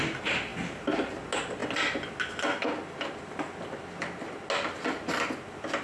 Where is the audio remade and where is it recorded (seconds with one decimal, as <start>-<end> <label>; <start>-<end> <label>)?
0.0-5.8 recorded

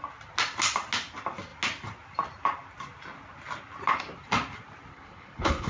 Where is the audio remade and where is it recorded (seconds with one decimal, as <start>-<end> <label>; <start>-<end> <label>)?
0.0-4.9 recorded; 4.9-5.7 remade

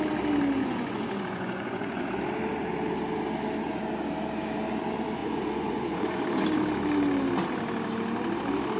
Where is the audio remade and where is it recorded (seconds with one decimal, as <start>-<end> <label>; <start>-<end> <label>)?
0.0-0.6 recorded; 0.6-2.1 remade; 2.1-5.2 recorded; 5.2-6.2 remade; 6.2-8.8 recorded